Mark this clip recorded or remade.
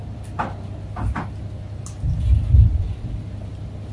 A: recorded